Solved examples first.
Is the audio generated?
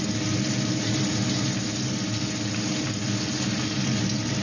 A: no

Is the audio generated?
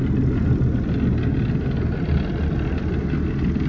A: no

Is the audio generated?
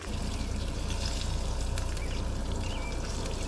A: no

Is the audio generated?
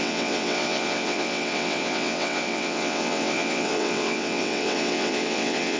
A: yes